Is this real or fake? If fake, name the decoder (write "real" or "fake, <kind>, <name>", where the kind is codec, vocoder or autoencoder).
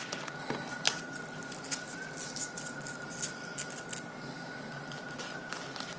real